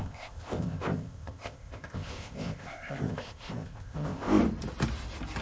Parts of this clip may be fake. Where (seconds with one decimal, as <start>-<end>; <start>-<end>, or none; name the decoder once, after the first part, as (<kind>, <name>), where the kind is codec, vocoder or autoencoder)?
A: 0.0-4.4 (codec, ZipCodec)